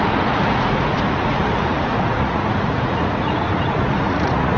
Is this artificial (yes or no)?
yes